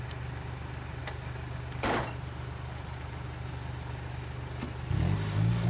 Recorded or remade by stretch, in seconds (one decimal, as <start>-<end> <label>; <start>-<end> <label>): 0.0-5.7 recorded